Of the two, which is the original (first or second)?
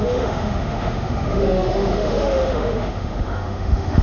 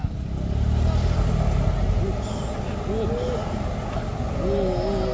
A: second